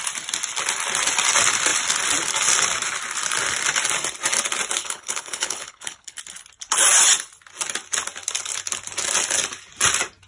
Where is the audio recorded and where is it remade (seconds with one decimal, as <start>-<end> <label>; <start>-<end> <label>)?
0.0-4.8 recorded; 4.8-6.2 remade; 6.2-10.3 recorded